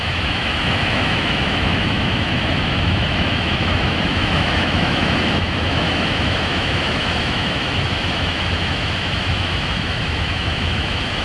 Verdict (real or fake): fake